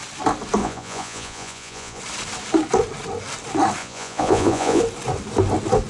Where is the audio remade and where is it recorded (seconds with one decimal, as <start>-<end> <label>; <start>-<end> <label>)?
0.0-0.6 recorded; 0.6-2.0 remade; 2.0-3.8 recorded; 3.8-4.8 remade; 4.8-5.9 recorded